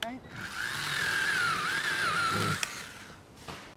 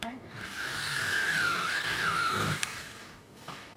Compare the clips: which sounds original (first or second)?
first